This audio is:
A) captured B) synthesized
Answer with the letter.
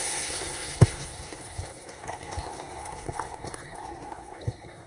B